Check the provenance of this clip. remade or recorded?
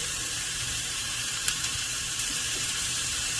remade